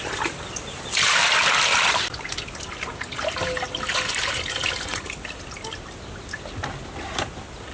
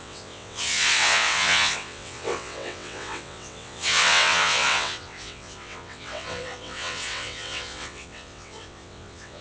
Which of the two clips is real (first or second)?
first